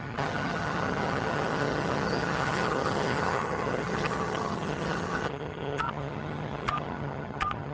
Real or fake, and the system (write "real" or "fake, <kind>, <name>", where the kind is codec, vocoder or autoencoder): fake, vocoder, HiFi-GAN